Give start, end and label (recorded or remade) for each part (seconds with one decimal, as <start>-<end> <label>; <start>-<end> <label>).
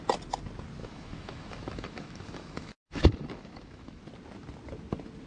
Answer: 0.0-0.8 recorded; 0.8-4.0 remade; 4.0-5.3 recorded